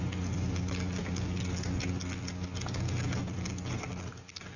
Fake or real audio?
real